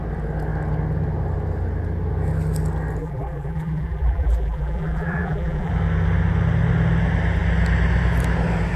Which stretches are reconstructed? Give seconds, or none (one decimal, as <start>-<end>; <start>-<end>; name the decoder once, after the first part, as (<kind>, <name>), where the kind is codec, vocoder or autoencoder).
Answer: 3.0-5.7 (vocoder, BigVGAN v2)